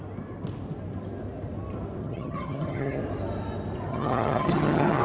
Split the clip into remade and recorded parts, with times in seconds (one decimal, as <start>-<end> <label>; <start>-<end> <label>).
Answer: 0.0-2.0 recorded; 2.0-3.0 remade; 3.0-3.9 recorded; 3.9-5.0 remade